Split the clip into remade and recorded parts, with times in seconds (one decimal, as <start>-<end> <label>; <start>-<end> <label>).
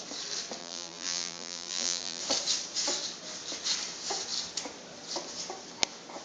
0.0-0.6 recorded; 0.6-2.2 remade; 2.2-6.2 recorded